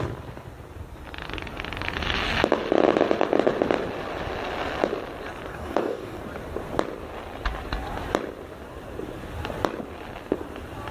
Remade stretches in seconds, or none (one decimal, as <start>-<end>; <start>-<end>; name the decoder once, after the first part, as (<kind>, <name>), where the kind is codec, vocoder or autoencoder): 5.5-6.2 (codec, DAC)

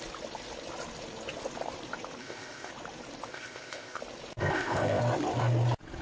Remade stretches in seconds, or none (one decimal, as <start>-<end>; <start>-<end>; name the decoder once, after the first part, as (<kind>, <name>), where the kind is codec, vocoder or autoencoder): 2.2-2.7 (codec, ZipCodec); 3.3-4.0; 4.4-5.0

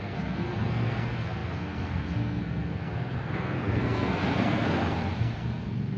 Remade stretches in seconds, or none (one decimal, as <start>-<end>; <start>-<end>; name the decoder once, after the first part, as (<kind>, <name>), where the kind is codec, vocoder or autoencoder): 0.0-6.0 (codec, SNAC)

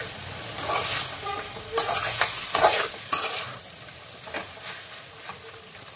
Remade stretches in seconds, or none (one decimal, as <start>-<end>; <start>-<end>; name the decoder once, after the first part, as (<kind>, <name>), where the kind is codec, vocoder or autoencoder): none

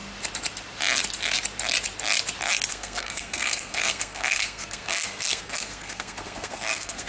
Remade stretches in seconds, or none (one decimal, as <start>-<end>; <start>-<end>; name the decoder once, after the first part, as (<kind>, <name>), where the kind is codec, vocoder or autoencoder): 2.7-7.1 (codec, SNAC)

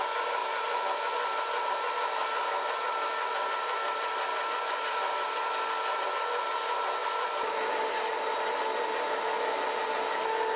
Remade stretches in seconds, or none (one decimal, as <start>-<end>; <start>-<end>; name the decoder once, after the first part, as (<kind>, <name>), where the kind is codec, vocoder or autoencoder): 0.4-1.7 (vocoder, BigVGAN v2); 2.2-6.1; 7.0-7.7

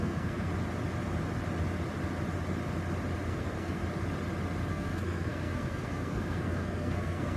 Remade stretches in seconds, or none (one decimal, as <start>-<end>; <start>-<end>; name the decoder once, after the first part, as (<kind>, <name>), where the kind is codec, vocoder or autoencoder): 0.0-0.5 (codec, SNAC); 3.3-3.8; 4.7-7.4

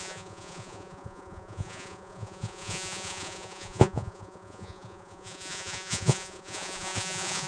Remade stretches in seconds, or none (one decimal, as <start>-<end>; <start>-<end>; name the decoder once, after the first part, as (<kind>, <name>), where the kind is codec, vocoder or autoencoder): 0.0-7.5 (vocoder, Vocos)